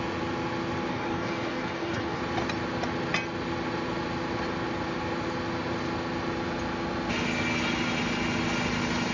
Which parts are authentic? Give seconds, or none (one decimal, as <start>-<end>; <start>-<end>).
0.0-0.9; 2.2-9.1